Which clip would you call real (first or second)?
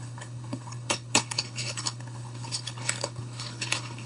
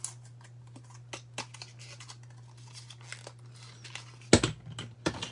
second